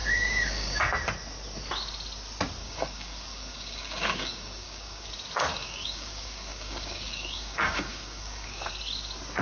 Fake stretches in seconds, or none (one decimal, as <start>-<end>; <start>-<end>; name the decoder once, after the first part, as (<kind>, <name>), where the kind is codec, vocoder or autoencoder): 0.0-0.8 (codec, DAC); 2.6-5.1; 5.5-8.7